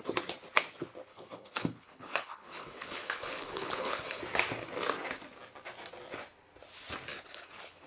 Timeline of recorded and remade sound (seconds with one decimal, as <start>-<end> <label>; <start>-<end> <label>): 0.0-1.1 recorded; 1.1-4.2 remade; 4.2-7.1 recorded; 7.1-7.9 remade